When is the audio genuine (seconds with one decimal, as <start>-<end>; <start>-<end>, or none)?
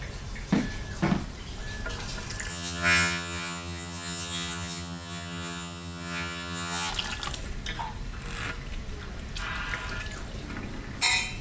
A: 0.0-2.5; 6.9-11.4